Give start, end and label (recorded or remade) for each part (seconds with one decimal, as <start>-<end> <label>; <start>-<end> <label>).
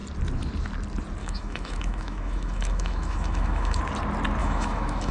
0.0-1.2 recorded; 1.2-3.8 remade; 3.8-4.4 recorded; 4.4-5.1 remade